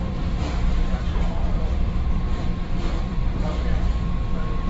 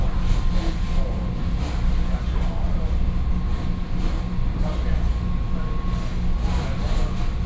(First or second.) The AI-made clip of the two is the first